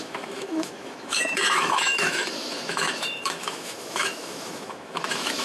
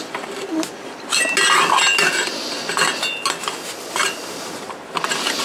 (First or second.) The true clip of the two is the second